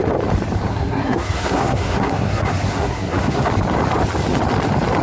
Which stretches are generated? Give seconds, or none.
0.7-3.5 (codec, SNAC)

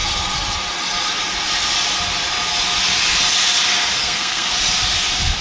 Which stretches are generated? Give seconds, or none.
4.0-4.5 (codec, SNAC)

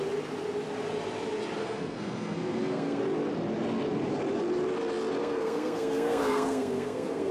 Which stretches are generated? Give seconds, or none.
1.6-3.0 (codec, SNAC); 5.2-7.3

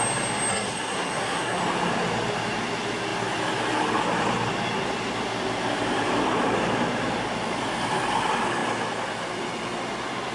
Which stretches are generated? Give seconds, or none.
0.5-1.6 (codec, SNAC)

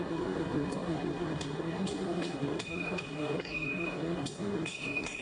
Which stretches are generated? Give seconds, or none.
0.0-5.2 (codec, SNAC)